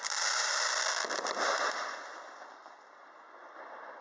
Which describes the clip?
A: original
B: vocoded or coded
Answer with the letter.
A